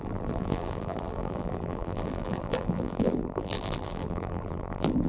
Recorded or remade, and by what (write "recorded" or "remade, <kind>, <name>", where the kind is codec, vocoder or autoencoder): remade, vocoder, BigVGAN v2